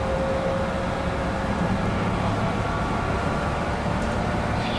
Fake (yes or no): no